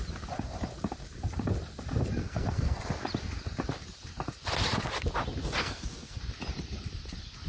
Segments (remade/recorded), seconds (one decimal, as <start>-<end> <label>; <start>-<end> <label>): 0.0-2.2 recorded; 2.2-2.8 remade; 2.8-5.6 recorded; 5.6-6.2 remade; 6.2-7.5 recorded